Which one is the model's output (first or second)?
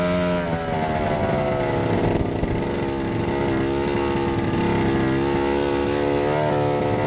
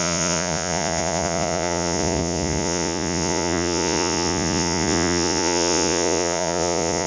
second